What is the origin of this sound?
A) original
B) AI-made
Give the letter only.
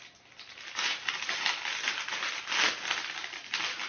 A